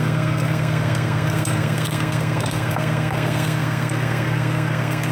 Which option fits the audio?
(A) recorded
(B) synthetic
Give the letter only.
B